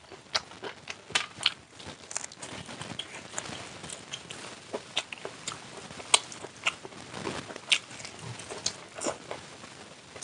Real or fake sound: real